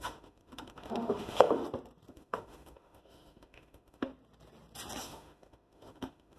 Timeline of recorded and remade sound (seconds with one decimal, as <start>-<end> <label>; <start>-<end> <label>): 0.0-1.6 remade; 1.6-2.1 recorded; 2.1-4.1 remade; 4.1-5.0 recorded; 5.0-6.4 remade